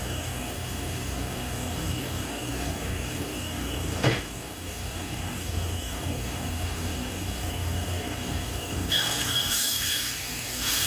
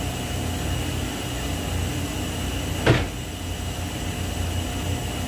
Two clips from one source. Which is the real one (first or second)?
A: second